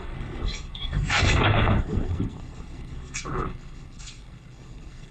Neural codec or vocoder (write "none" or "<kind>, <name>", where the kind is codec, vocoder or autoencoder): codec, SNAC